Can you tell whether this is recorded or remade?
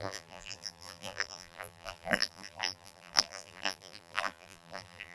remade